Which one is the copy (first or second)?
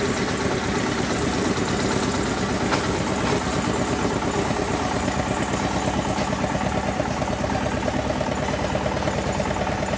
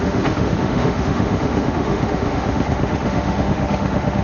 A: second